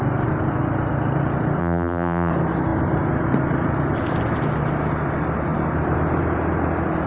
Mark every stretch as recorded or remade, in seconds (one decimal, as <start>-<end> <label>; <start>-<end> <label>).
0.0-1.6 recorded; 1.6-2.3 remade; 2.3-7.1 recorded